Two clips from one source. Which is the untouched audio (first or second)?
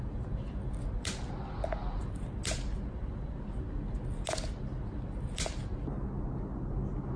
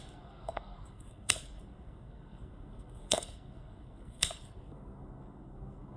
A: first